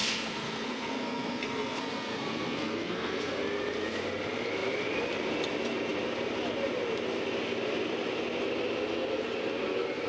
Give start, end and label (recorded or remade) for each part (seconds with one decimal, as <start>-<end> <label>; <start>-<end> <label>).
0.0-3.4 remade; 3.4-10.1 recorded